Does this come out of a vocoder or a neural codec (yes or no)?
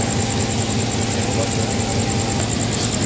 no